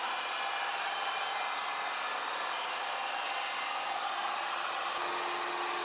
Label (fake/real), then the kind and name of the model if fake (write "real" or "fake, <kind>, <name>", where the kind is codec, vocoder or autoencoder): real